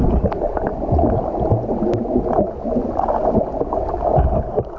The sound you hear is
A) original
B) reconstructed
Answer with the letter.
A